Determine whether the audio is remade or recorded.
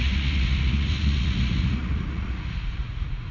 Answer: remade